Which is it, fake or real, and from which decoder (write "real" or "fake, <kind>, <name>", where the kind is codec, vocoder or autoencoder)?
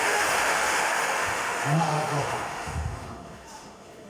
fake, autoencoder, DAC-VAE